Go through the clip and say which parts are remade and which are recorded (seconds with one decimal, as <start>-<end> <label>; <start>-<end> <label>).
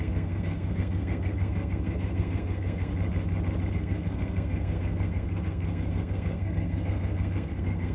0.0-2.9 remade; 2.9-3.7 recorded; 3.7-7.9 remade